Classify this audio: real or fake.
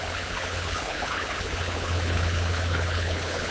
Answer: fake